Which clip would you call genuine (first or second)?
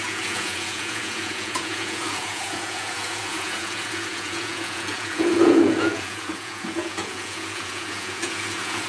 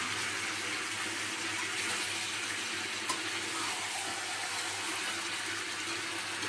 second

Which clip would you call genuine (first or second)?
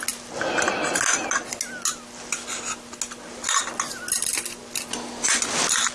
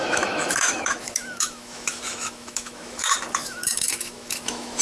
first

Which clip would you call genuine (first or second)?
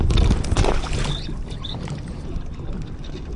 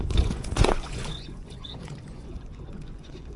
first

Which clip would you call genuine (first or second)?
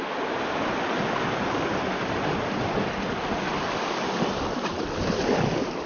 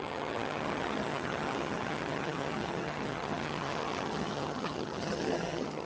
first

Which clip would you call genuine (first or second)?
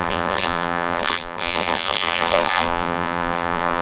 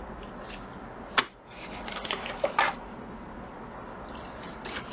second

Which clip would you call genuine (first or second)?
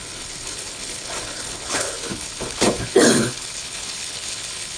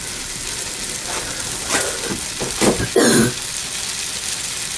second